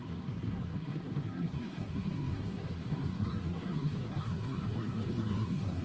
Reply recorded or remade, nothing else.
remade